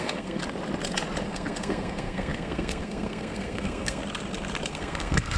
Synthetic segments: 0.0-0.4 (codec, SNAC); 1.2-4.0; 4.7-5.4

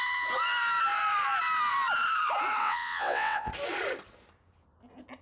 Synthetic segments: 2.6-3.5 (vocoder, WaveNeXt)

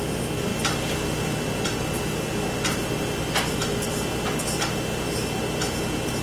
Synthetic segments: none

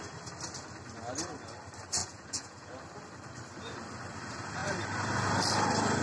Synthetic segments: 2.0-2.7 (vocoder, Vocos)

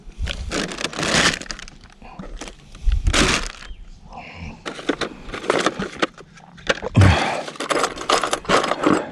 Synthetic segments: none

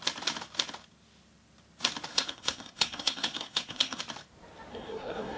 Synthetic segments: 2.1-4.0 (codec, SNAC); 4.7-5.4